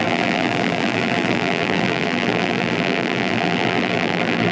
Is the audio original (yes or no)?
no